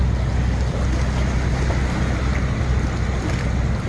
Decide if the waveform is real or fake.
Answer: real